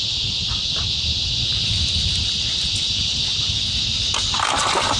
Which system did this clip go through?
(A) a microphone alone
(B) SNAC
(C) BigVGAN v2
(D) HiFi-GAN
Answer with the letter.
A